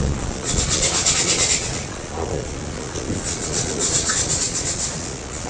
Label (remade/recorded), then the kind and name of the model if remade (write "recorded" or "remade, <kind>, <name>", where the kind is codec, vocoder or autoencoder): remade, vocoder, Vocos